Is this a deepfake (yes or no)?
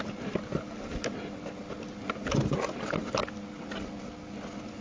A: no